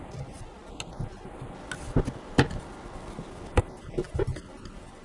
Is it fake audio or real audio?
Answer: real